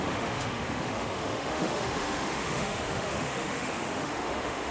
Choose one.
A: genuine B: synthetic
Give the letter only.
B